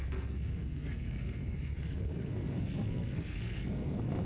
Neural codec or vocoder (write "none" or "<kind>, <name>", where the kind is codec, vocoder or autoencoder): codec, SNAC